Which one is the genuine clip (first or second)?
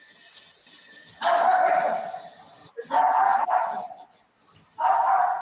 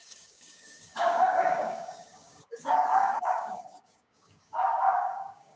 first